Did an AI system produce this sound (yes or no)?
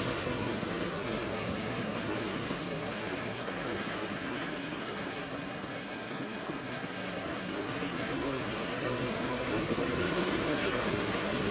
yes